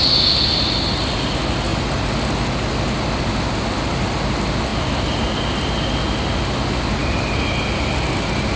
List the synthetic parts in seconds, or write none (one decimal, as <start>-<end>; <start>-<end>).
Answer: none